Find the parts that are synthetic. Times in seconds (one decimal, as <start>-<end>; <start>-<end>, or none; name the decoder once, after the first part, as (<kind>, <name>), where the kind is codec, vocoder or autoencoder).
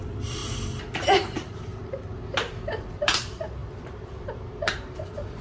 0.0-0.4 (vocoder, BigVGAN v2); 1.0-1.7; 2.7-5.4